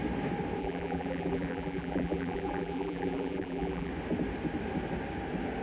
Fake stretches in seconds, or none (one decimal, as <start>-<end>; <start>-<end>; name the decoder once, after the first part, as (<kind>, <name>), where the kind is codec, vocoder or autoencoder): 0.6-3.9 (vocoder, BigVGAN v2)